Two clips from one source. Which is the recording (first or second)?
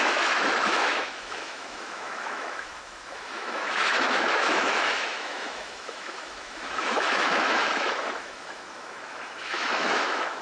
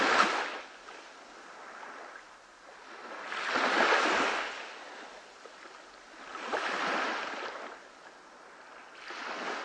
second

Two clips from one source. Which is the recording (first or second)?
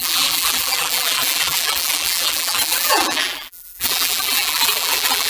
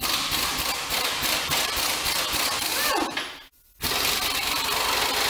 second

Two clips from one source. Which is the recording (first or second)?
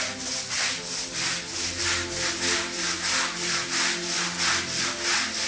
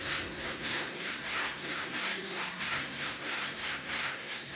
first